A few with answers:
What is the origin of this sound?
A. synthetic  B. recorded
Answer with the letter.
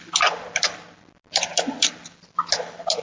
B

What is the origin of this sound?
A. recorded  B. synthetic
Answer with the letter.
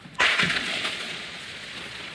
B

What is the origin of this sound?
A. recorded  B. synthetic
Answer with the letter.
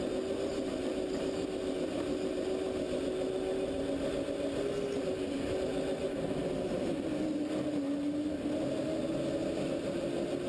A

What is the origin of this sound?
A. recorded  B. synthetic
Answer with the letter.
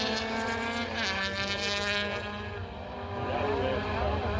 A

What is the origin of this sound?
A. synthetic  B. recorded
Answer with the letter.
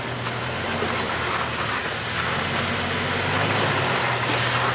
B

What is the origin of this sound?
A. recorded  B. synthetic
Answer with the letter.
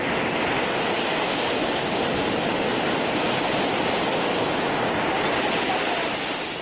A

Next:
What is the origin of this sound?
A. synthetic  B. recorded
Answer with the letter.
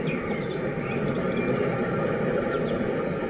B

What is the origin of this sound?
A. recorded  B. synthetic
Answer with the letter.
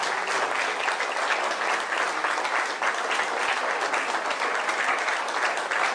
A